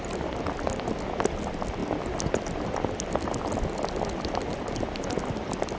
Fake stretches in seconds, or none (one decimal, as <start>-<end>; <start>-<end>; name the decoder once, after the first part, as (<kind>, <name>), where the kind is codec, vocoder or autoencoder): none